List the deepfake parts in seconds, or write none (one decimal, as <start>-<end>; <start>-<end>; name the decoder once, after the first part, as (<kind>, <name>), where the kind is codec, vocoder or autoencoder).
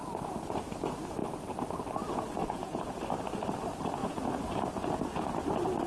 2.4-3.0 (vocoder, Vocos); 4.0-4.5